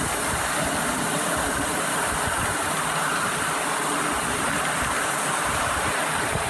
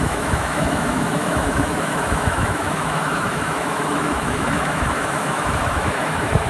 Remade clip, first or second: second